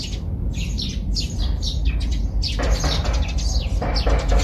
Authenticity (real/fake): real